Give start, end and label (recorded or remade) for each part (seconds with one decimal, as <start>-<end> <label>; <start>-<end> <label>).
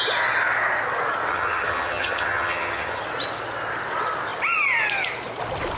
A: 0.0-1.3 recorded; 1.3-3.0 remade; 3.0-5.8 recorded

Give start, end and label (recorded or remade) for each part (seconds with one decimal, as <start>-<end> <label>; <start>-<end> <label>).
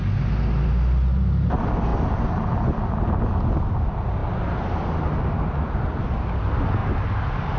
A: 0.0-7.6 recorded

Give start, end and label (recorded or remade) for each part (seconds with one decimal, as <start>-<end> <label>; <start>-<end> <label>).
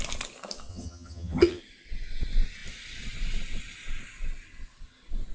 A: 0.0-0.7 recorded; 0.7-1.6 remade; 1.6-5.3 recorded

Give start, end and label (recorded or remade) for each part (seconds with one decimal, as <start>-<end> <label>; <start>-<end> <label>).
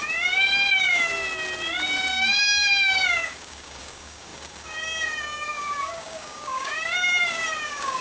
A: 0.0-1.1 remade; 1.1-2.1 recorded; 2.1-8.0 remade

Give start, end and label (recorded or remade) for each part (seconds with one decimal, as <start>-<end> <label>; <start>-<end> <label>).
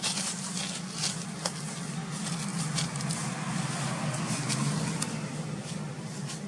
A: 0.0-6.5 recorded